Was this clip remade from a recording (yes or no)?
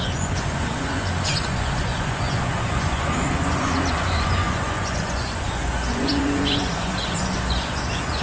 yes